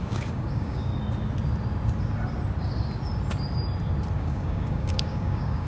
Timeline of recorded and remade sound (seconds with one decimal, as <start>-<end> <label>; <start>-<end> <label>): 0.0-0.9 remade; 0.9-4.2 recorded; 4.2-5.7 remade